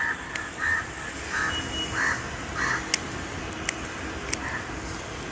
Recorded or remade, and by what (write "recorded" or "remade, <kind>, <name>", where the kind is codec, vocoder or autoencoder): recorded